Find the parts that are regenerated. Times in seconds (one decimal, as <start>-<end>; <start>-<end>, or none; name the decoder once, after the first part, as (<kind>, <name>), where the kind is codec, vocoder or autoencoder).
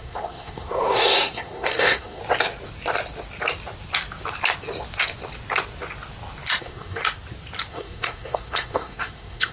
0.0-2.2 (codec, SNAC); 6.6-7.0; 7.7-9.5